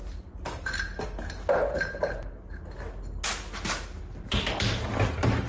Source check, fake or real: real